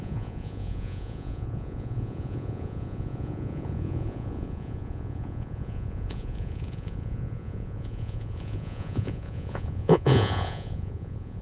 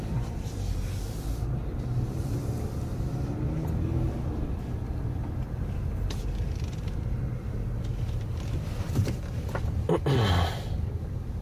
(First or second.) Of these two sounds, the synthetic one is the first